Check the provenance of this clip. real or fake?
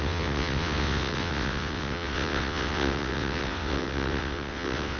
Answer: fake